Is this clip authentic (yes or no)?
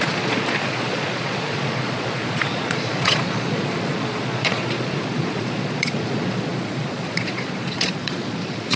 no